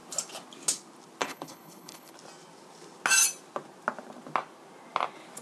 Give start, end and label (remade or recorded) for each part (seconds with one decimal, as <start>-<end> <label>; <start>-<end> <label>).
0.0-1.2 recorded; 1.2-2.1 remade; 2.1-5.4 recorded